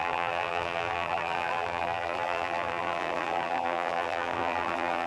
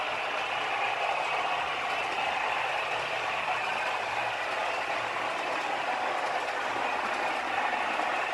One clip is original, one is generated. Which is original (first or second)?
second